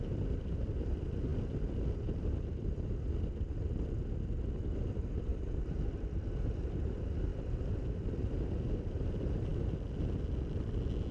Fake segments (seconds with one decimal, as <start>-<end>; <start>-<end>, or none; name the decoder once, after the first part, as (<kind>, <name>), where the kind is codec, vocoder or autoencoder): none